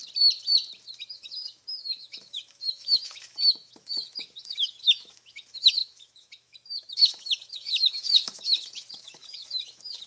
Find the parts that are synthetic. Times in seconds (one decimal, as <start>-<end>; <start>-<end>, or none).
1.0-10.1